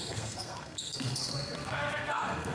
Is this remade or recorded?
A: remade